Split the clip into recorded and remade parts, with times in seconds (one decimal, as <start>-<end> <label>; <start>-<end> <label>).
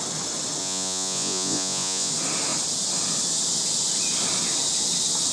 0.0-0.6 recorded; 0.6-2.1 remade; 2.1-5.3 recorded